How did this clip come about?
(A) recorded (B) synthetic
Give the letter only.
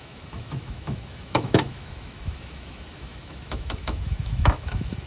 B